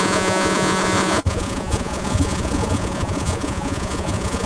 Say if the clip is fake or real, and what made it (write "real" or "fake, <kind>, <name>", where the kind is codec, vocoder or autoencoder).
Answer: fake, vocoder, Vocos